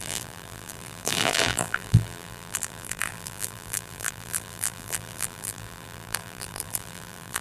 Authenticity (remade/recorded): remade